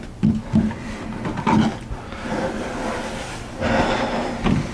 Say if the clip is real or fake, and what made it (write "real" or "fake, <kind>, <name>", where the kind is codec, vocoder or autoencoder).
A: real